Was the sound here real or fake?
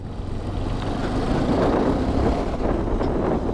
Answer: real